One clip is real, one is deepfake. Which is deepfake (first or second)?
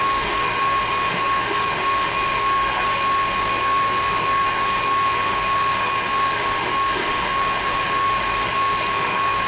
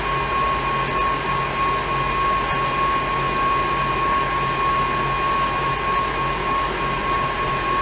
first